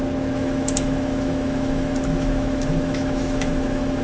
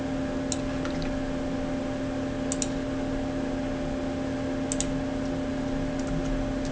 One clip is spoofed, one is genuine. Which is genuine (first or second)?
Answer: second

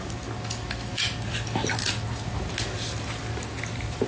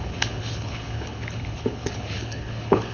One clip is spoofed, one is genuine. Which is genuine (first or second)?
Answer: first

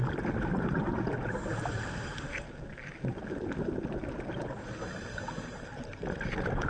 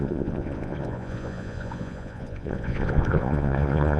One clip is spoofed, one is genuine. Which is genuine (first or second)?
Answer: first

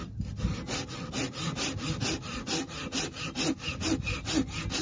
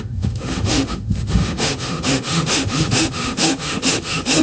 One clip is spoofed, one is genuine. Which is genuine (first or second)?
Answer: first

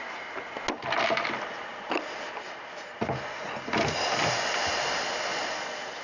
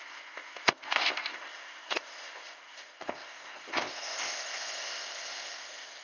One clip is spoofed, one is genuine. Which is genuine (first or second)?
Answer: first